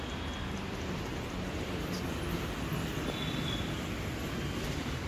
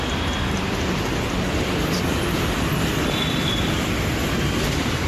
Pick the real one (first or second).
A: first